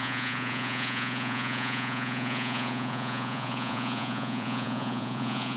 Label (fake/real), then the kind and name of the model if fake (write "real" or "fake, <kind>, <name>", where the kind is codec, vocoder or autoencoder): fake, vocoder, Vocos